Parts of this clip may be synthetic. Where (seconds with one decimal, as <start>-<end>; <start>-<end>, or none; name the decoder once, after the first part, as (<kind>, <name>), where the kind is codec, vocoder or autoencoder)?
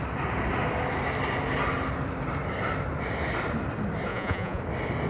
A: 4.1-4.6 (vocoder, Vocos)